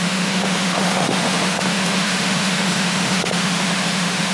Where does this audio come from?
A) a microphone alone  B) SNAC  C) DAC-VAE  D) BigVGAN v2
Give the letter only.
C